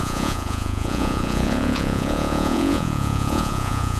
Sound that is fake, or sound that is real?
fake